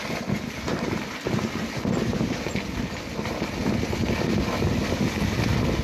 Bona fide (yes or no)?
yes